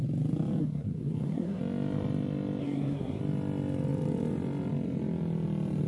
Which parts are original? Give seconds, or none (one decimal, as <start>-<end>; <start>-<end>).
0.0-0.6; 1.6-2.6; 3.2-5.9